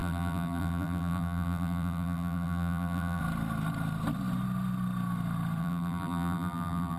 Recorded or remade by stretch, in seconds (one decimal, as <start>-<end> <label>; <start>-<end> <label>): 0.0-3.2 remade; 3.2-5.6 recorded; 5.6-7.0 remade

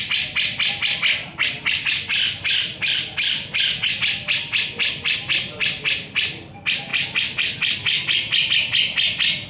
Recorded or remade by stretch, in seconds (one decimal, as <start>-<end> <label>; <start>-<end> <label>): 0.0-2.1 recorded; 2.1-5.9 remade; 5.9-9.5 recorded

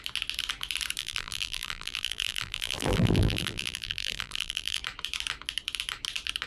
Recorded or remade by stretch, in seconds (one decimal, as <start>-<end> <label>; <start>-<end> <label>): 0.0-1.0 recorded; 1.0-4.8 remade; 4.8-6.5 recorded

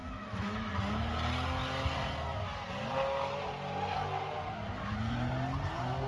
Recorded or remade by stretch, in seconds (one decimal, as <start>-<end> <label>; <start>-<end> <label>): 0.0-0.7 remade; 0.7-6.1 recorded

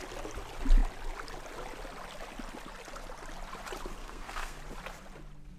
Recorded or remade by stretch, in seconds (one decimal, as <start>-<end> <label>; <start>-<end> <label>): 0.0-4.0 recorded; 4.0-4.6 remade; 4.6-5.6 recorded